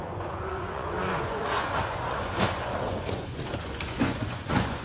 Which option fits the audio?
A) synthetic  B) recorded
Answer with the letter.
A